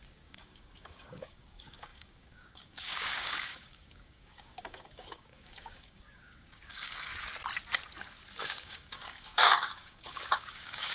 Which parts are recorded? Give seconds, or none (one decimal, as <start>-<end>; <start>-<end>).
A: 7.1-8.4